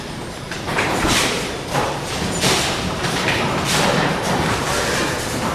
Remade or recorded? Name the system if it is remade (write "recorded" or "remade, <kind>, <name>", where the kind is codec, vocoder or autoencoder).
remade, vocoder, BigVGAN v2